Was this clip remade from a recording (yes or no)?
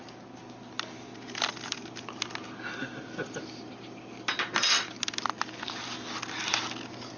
no